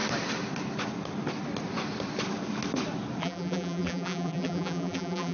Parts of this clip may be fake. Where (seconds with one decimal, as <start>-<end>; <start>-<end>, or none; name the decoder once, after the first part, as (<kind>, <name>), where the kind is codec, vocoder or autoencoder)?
3.2-5.3 (vocoder, BigVGAN v2)

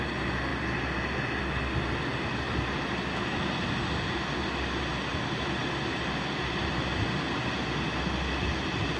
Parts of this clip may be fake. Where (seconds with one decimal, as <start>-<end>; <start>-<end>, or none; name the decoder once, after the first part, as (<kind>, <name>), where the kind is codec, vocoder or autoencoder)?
5.6-6.7 (vocoder, BigVGAN v2)

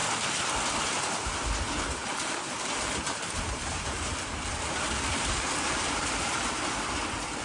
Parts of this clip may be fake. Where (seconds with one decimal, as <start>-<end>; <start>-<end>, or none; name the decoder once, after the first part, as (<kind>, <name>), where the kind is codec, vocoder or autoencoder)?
2.0-6.4 (vocoder, BigVGAN v2)